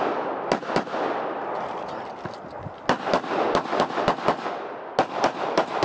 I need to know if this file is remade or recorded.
recorded